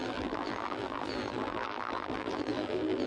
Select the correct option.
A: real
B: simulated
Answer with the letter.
B